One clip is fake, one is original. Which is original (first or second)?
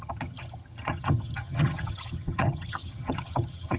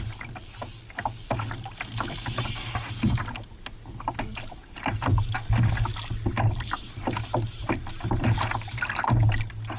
second